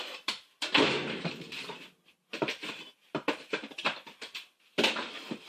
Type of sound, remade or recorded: remade